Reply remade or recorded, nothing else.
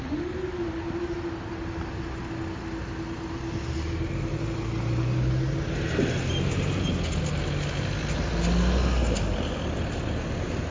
recorded